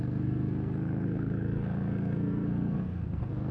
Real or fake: fake